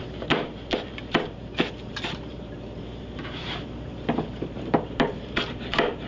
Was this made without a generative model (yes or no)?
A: no